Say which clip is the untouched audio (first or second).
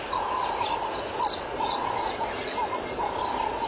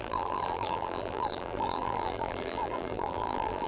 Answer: first